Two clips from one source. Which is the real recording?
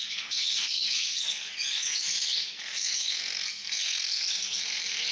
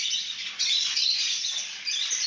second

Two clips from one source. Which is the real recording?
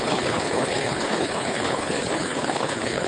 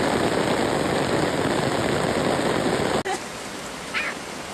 second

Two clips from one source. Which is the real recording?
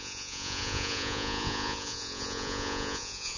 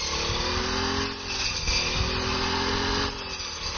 second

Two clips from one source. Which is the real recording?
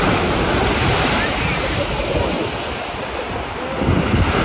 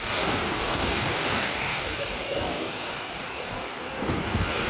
first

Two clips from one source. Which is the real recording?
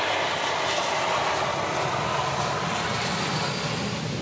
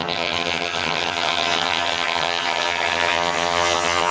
first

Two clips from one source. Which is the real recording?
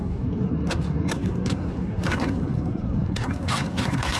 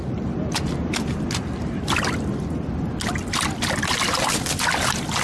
second